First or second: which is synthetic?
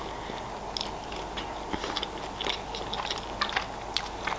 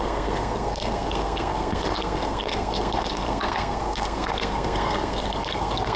second